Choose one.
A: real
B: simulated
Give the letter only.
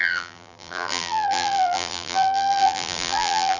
B